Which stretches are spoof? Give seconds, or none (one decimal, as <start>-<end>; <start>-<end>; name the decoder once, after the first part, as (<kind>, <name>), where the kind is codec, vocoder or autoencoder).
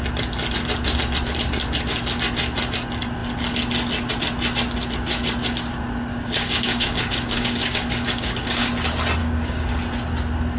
6.1-8.7 (codec, DAC); 9.2-9.7